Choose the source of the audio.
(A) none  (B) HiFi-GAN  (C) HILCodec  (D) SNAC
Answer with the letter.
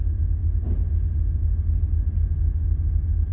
A